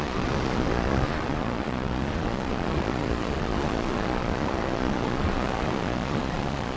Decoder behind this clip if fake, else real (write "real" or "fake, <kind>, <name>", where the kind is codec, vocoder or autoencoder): fake, vocoder, Vocos